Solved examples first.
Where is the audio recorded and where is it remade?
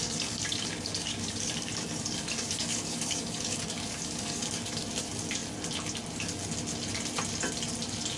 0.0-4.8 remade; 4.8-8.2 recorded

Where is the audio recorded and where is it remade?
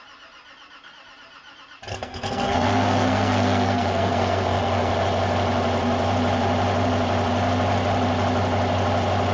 0.0-1.9 recorded; 1.9-4.9 remade; 4.9-9.3 recorded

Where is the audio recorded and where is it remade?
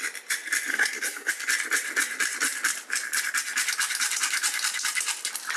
0.0-0.7 recorded; 0.7-1.3 remade; 1.3-5.6 recorded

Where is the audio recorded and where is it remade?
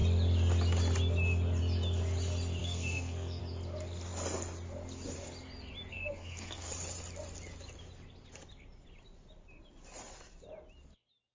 0.0-2.6 recorded; 2.6-3.4 remade; 3.4-5.9 recorded; 5.9-6.7 remade; 6.7-11.3 recorded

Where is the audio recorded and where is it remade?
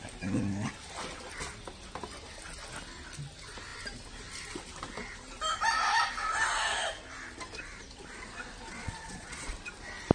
0.0-8.7 recorded; 8.7-9.5 remade; 9.5-10.1 recorded